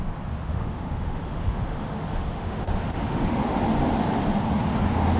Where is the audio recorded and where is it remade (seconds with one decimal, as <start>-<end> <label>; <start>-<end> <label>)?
0.0-0.5 recorded; 0.5-3.6 remade; 3.6-5.2 recorded